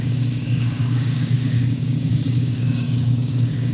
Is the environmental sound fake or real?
fake